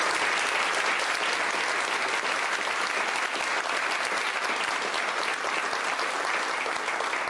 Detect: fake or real real